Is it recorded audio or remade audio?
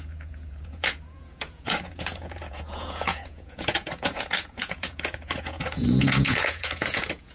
remade